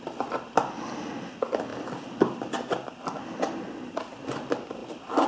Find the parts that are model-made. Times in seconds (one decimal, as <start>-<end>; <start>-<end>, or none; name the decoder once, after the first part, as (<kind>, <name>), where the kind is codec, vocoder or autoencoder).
none

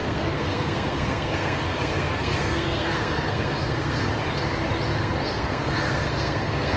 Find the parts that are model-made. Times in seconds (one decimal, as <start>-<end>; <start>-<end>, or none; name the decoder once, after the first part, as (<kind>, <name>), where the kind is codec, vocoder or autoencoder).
0.0-4.1 (codec, SNAC); 4.9-6.8